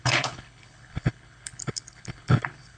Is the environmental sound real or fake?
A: fake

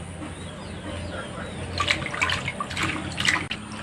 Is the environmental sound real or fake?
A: real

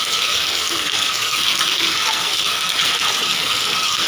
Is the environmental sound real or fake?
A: fake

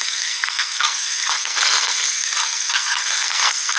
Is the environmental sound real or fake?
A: fake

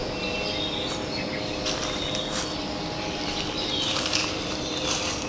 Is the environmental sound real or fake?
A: real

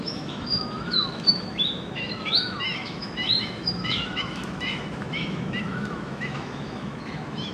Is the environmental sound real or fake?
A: fake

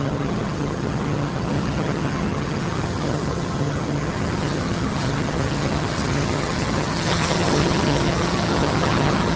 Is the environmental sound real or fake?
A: fake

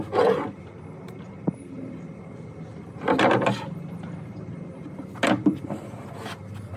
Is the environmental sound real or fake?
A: real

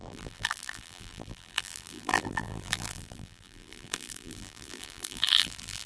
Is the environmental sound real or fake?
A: fake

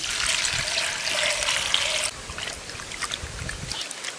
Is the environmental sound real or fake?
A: real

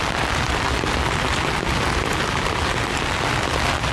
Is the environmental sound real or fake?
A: real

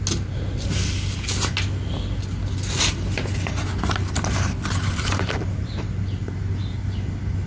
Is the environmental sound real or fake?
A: real